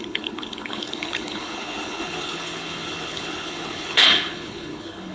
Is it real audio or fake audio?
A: fake